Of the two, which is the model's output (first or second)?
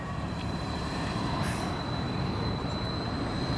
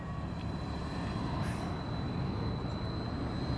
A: first